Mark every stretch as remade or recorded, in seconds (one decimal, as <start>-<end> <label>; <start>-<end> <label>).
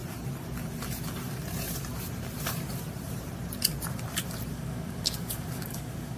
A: 0.0-4.5 recorded; 4.5-6.2 remade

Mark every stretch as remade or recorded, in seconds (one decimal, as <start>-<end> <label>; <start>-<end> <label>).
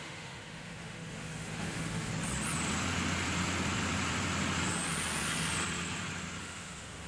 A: 0.0-2.1 remade; 2.1-6.4 recorded; 6.4-7.1 remade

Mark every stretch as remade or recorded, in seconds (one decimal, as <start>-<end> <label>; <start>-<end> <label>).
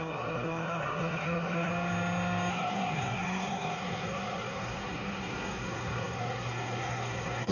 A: 0.0-1.7 remade; 1.7-2.5 recorded; 2.5-7.5 remade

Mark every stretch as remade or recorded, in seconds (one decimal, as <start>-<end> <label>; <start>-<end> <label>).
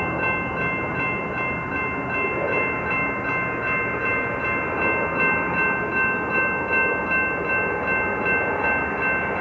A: 0.0-9.4 recorded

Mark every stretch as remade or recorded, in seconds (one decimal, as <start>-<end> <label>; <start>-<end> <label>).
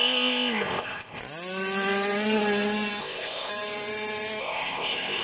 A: 0.0-1.2 remade; 1.2-3.0 recorded; 3.0-3.5 remade; 3.5-4.4 recorded; 4.4-5.2 remade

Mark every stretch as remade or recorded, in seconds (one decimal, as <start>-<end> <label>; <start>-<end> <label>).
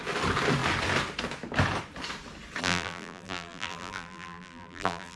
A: 0.0-2.6 recorded; 2.6-5.2 remade